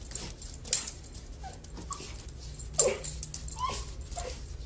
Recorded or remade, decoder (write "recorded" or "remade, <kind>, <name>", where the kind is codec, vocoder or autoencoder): recorded